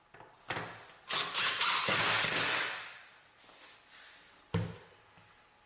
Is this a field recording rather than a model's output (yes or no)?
yes